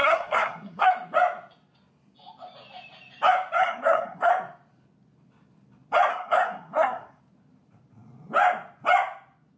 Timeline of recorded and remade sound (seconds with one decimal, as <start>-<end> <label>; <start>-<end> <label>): 0.0-0.9 remade; 0.9-3.6 recorded; 3.6-4.3 remade; 4.3-6.1 recorded; 6.1-7.2 remade; 7.2-9.6 recorded